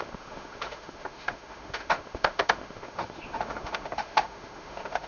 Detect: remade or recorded remade